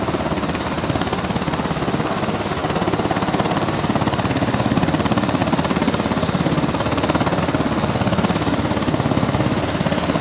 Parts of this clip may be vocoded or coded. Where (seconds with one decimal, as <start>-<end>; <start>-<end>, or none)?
none